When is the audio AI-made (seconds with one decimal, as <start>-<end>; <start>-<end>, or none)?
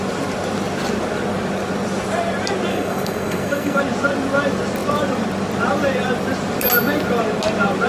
2.7-3.8